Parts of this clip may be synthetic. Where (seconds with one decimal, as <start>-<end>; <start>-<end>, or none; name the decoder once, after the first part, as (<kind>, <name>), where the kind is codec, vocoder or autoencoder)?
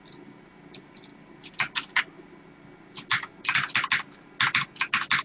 none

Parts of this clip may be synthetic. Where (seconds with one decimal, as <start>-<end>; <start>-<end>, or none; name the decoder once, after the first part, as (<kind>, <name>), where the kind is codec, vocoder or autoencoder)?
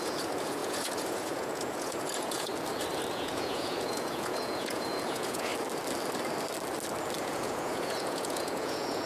0.0-2.5 (vocoder, Vocos); 3.1-5.5; 7.2-9.1